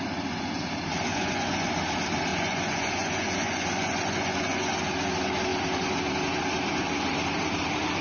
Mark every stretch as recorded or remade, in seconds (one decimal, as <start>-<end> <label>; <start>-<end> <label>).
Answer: 0.0-1.1 recorded; 1.1-1.7 remade; 1.7-2.3 recorded; 2.3-4.7 remade; 4.7-8.0 recorded